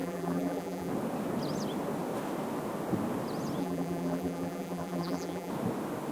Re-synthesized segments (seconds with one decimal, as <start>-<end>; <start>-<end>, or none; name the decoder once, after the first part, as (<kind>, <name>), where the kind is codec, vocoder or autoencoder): 0.0-0.9 (vocoder, BigVGAN v2); 3.6-5.5